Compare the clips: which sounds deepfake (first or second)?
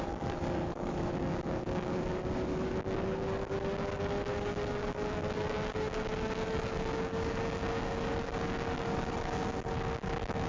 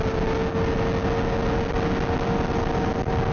first